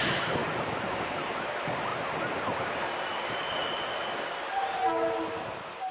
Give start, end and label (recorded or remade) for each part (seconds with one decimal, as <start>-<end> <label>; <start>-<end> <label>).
0.0-0.4 recorded; 0.4-1.5 remade; 1.5-5.9 recorded

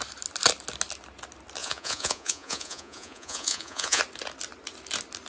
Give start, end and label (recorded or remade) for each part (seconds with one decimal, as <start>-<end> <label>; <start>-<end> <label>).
0.0-1.6 recorded; 1.6-4.0 remade; 4.0-5.3 recorded

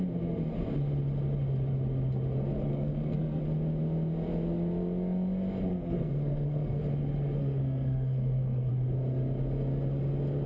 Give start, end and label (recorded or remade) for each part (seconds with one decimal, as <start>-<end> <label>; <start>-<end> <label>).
0.0-2.7 recorded; 2.7-3.4 remade; 3.4-5.7 recorded; 5.7-6.8 remade; 6.8-7.4 recorded; 7.4-8.7 remade; 8.7-10.5 recorded

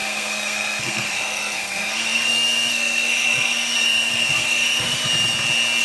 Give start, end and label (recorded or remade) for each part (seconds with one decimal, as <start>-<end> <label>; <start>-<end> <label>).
0.0-5.0 remade; 5.0-5.8 recorded

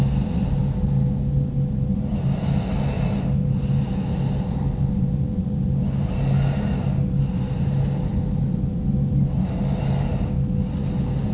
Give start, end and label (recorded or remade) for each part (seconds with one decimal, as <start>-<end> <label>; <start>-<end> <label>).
0.0-11.3 recorded

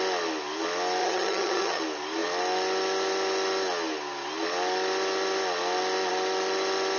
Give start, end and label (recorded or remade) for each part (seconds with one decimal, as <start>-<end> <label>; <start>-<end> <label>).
0.0-1.0 recorded; 1.0-1.8 remade; 1.8-7.0 recorded